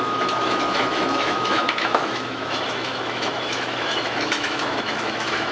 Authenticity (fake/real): fake